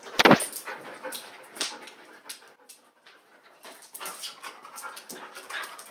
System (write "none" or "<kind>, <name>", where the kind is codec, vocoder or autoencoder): none